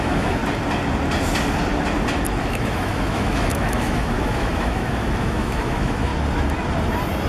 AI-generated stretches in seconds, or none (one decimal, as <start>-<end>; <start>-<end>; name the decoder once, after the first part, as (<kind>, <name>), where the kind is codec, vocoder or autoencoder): 0.0-0.4 (autoencoder, DAC-VAE); 2.4-6.1